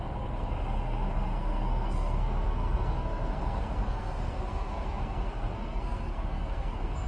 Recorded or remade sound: remade